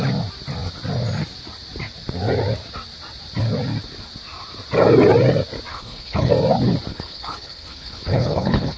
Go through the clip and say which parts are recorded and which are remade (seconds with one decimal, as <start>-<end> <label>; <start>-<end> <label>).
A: 0.0-5.7 recorded; 5.7-6.3 remade; 6.3-6.9 recorded; 6.9-8.8 remade